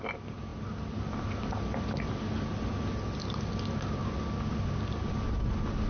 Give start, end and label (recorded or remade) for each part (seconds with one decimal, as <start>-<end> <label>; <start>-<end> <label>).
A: 0.0-5.9 recorded